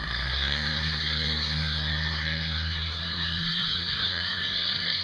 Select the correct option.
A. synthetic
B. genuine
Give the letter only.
A